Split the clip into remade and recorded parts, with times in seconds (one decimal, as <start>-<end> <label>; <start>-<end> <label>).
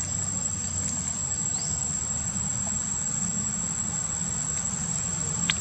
0.0-1.2 remade; 1.2-4.6 recorded; 4.6-5.6 remade